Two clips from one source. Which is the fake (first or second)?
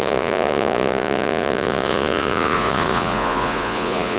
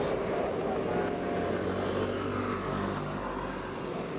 first